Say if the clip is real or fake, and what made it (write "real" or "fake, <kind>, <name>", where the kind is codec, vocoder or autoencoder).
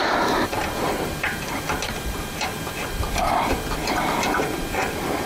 fake, vocoder, BigVGAN v2